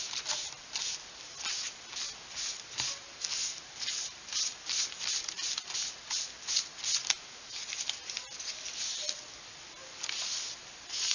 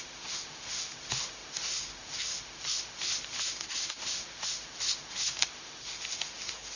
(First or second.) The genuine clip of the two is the first